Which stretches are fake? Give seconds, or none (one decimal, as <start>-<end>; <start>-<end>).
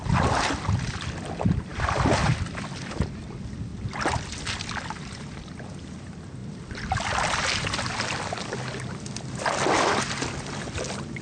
none